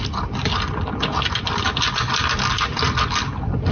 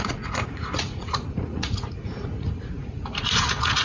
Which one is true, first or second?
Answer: first